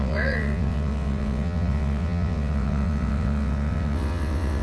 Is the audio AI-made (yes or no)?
yes